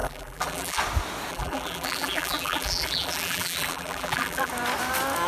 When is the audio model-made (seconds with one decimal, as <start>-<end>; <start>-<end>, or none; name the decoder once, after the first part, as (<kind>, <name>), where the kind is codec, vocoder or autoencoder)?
0.0-0.8 (vocoder, BigVGAN v2); 1.3-4.5